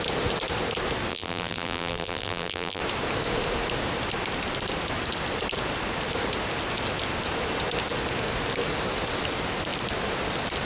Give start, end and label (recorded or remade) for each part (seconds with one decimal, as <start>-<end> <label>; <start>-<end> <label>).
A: 0.0-1.1 recorded; 1.1-2.8 remade; 2.8-10.7 recorded